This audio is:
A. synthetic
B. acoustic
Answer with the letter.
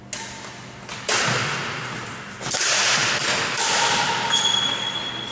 B